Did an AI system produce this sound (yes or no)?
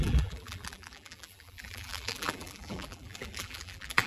yes